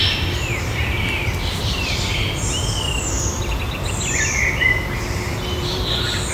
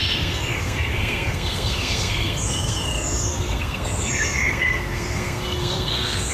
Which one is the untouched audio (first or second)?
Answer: first